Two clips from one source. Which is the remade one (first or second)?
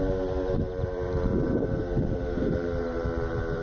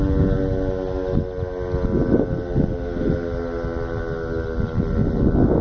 first